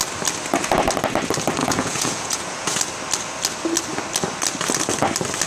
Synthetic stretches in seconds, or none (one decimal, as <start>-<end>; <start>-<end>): 1.6-2.8